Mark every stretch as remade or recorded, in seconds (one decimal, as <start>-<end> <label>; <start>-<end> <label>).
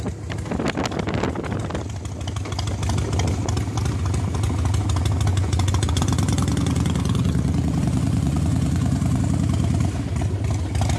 0.0-5.3 recorded; 5.3-9.2 remade; 9.2-11.0 recorded